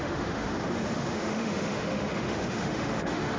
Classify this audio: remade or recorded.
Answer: remade